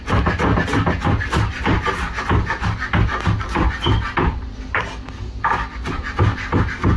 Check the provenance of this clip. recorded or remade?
recorded